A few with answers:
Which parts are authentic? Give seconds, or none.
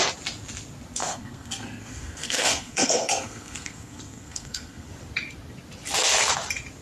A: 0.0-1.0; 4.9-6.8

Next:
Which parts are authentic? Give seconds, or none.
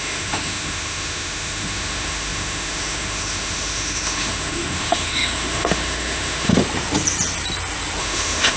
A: 6.6-8.0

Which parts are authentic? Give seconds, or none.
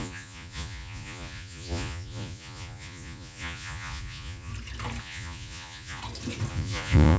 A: 4.5-5.0; 6.0-6.5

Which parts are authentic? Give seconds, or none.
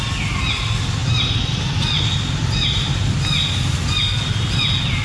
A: 0.0-5.0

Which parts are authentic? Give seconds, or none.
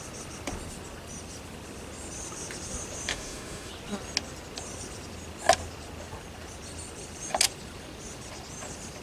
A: 0.0-3.1; 3.7-9.0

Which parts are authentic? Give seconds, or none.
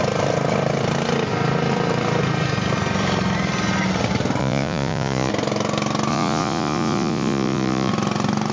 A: 0.0-4.4; 5.3-6.1; 7.9-8.5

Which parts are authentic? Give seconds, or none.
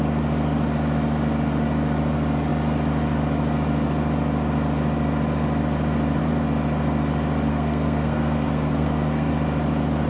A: 0.0-7.5; 9.3-10.1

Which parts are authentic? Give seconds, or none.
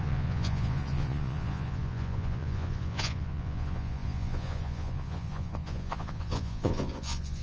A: none